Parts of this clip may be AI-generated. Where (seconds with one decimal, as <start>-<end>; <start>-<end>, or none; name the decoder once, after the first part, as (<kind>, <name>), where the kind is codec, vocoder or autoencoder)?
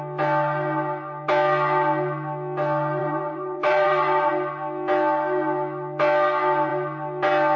3.0-4.3 (vocoder, BigVGAN v2)